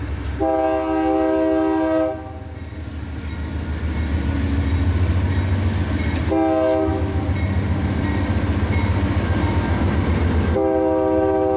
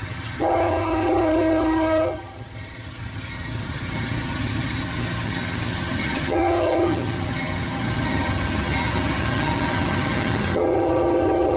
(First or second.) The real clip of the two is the first